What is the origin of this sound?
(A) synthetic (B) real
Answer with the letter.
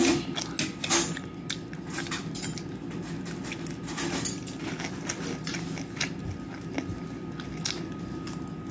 B